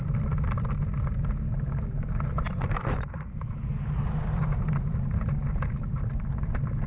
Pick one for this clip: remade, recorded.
recorded